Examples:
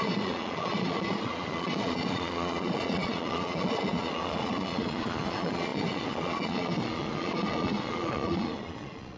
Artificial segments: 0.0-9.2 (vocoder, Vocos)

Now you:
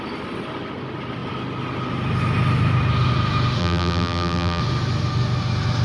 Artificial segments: 3.6-4.6 (vocoder, BigVGAN v2)

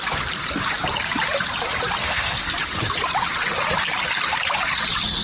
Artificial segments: 2.0-2.5 (codec, SNAC)

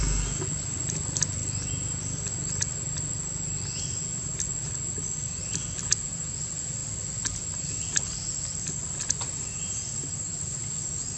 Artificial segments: none

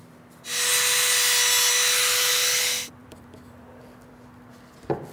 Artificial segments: 3.0-4.1 (vocoder, BigVGAN v2)

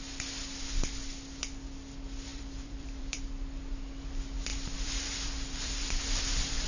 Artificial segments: 2.3-3.2 (vocoder, BigVGAN v2); 4.5-6.0